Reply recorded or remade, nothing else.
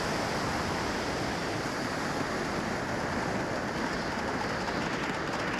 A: recorded